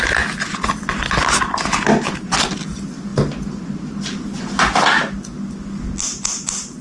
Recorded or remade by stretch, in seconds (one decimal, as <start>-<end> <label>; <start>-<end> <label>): 0.0-6.8 recorded